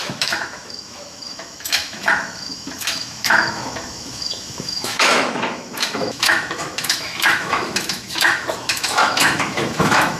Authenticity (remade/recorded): remade